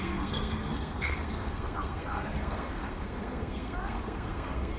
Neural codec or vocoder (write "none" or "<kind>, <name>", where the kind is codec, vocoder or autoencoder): codec, SNAC